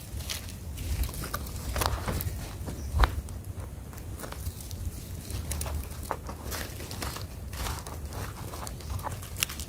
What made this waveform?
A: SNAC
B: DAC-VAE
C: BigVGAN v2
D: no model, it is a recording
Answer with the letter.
D